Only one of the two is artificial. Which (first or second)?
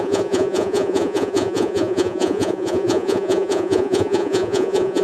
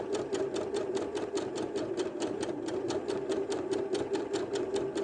first